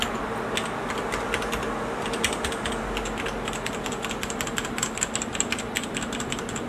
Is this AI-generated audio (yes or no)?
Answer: no